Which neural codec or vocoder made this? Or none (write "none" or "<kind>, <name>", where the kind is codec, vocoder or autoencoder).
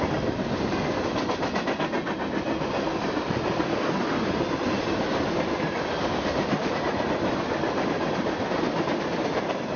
none